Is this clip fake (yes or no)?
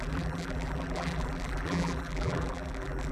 yes